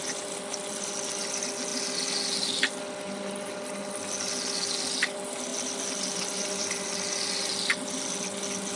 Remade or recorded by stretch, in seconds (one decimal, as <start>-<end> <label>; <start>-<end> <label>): 0.0-8.8 recorded